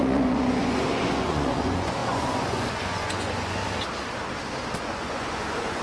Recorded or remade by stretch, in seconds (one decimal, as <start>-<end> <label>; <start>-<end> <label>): 0.0-3.6 remade; 3.6-4.8 recorded; 4.8-5.8 remade